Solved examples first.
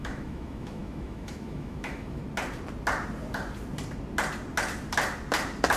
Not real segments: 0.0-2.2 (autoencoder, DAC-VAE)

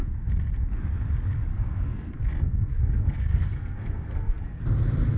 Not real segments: 1.5-4.6 (codec, SNAC)

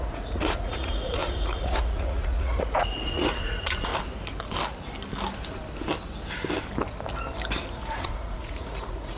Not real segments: 0.0-3.9 (vocoder, Vocos); 7.7-9.2

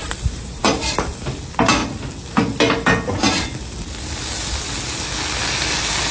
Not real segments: 0.0-0.8 (vocoder, BigVGAN v2)

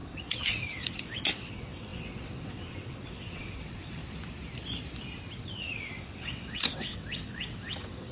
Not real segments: 0.0-4.0 (vocoder, WaveNeXt); 5.4-8.1

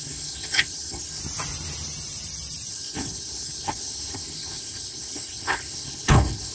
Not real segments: 0.0-1.2 (codec, HILCodec); 2.7-6.5